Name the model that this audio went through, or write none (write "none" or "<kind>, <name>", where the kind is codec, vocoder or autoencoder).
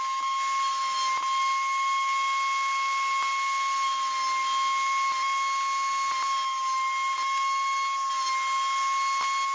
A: none